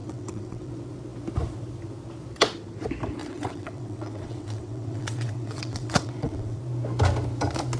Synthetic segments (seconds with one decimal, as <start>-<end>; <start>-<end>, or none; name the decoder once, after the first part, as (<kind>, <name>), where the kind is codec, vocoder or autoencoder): 0.0-0.7 (vocoder, WaveNeXt); 3.2-6.6